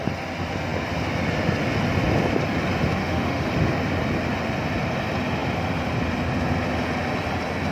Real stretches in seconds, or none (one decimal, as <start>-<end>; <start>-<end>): 0.0-3.0; 3.5-7.7